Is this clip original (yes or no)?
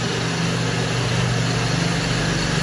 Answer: yes